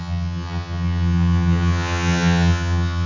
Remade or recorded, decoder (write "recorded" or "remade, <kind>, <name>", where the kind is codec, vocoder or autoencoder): remade, vocoder, HiFi-GAN